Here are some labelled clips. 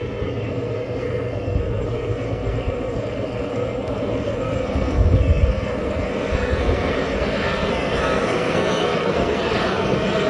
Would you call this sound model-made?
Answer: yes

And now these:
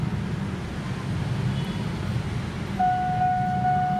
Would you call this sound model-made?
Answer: no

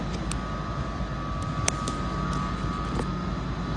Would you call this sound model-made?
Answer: no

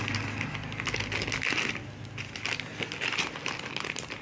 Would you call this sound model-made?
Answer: no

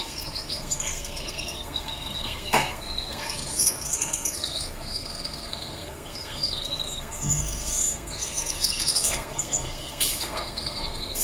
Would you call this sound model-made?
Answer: yes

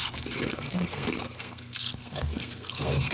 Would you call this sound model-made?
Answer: yes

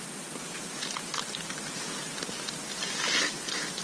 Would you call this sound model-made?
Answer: no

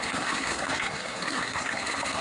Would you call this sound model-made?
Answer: yes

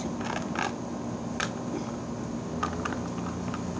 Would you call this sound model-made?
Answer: no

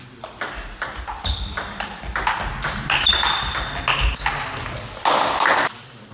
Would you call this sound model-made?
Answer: no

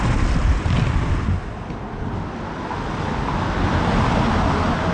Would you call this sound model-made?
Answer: no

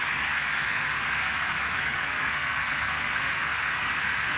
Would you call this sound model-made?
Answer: yes